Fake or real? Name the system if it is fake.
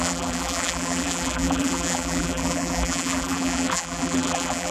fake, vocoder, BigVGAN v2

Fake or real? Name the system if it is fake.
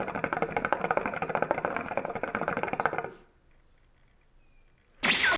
real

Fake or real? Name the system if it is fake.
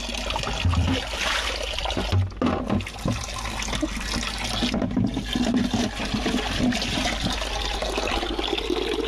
real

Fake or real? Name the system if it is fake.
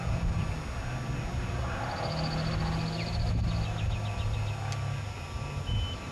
real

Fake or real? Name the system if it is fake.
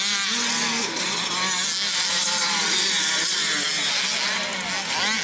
real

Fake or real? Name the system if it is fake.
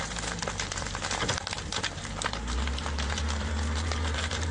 fake, vocoder, BigVGAN v2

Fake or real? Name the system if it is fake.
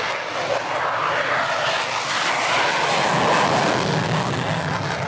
real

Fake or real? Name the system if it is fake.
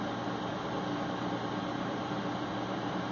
fake, vocoder, BigVGAN v2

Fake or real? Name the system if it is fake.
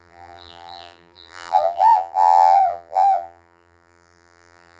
fake, vocoder, BigVGAN v2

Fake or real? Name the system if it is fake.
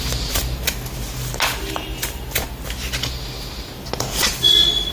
real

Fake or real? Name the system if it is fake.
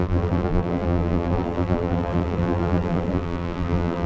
fake, vocoder, BigVGAN v2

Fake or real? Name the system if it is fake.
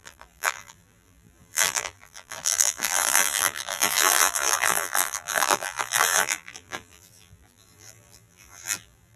fake, vocoder, BigVGAN v2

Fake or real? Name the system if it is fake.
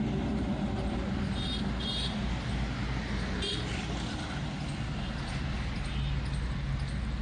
real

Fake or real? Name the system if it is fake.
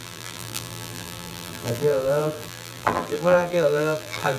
fake, vocoder, BigVGAN v2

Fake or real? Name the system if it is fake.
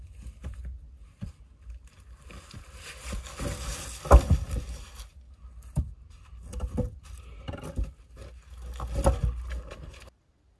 real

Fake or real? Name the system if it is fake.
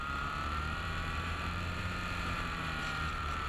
fake, vocoder, BigVGAN v2